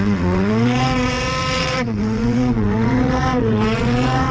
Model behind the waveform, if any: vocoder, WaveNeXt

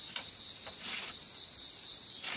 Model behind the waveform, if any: none